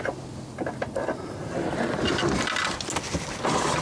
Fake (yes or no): no